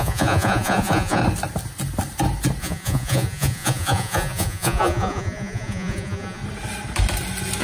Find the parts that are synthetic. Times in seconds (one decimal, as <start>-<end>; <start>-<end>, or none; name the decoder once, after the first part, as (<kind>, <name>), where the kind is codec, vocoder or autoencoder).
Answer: 0.0-1.2 (vocoder, Vocos); 2.6-6.4